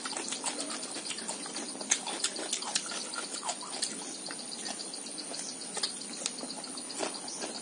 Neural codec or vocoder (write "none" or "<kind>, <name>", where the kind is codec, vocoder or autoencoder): none